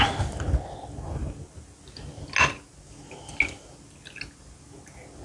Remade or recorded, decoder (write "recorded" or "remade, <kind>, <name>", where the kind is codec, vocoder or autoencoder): recorded